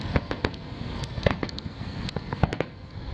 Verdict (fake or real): fake